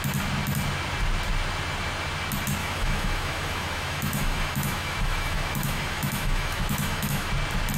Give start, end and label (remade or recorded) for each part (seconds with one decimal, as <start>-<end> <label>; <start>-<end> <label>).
0.0-2.6 recorded; 2.6-7.3 remade; 7.3-7.8 recorded